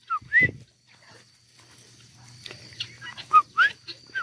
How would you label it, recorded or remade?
recorded